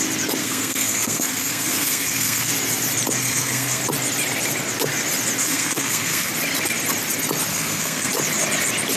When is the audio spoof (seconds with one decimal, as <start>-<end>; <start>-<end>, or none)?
0.4-2.5; 3.2-3.8; 5.4-6.3; 7.5-8.1